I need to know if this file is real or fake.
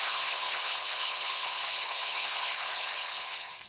fake